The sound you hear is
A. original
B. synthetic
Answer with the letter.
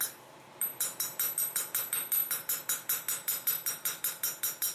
A